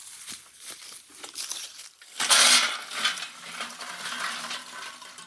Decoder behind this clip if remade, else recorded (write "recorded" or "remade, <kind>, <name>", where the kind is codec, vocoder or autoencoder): remade, vocoder, BigVGAN v2